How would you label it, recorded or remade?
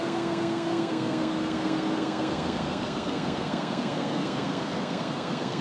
remade